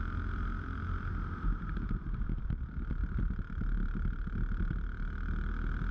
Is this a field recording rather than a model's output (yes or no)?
yes